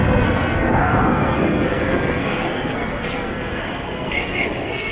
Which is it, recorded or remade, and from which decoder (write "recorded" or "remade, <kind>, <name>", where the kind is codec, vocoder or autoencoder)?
remade, codec, SNAC